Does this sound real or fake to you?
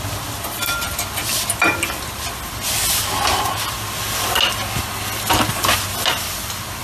real